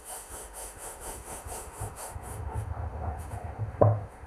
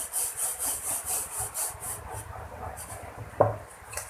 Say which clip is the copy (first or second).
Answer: first